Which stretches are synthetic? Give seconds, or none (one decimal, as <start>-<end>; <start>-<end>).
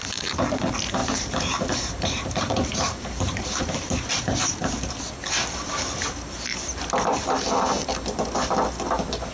1.0-4.9